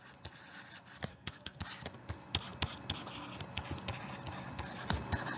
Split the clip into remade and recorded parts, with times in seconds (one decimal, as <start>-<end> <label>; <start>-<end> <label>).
0.0-1.1 recorded; 1.1-1.6 remade; 1.6-5.4 recorded